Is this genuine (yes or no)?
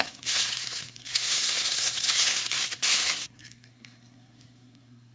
no